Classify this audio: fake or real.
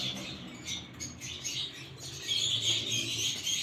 real